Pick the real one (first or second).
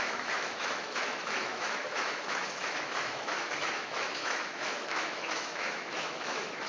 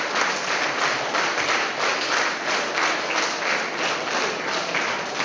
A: second